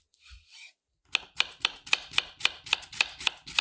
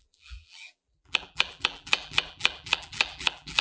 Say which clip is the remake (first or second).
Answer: second